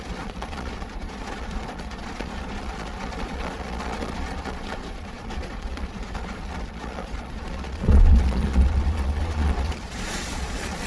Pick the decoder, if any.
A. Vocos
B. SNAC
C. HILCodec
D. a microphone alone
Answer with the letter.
A